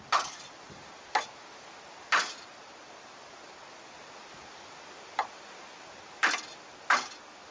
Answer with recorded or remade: recorded